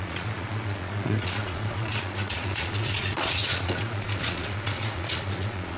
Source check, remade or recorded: remade